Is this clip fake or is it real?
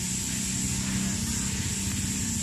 real